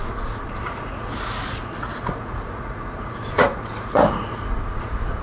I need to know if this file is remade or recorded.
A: remade